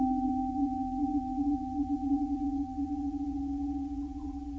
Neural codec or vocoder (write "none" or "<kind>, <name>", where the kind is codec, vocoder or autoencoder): vocoder, Vocos